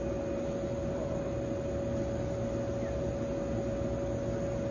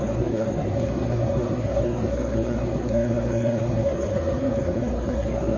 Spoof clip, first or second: second